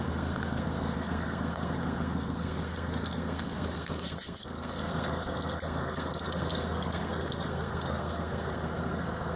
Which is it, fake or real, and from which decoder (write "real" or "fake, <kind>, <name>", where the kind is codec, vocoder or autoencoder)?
fake, codec, SNAC